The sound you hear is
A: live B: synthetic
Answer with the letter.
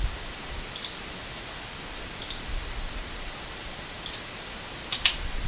A